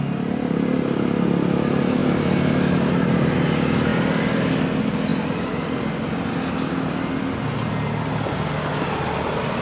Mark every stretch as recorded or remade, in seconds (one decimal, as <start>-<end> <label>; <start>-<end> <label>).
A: 0.0-9.6 recorded